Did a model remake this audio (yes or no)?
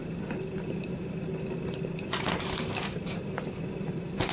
no